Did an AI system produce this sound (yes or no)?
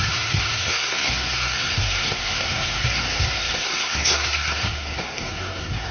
yes